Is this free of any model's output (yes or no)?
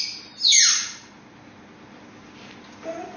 yes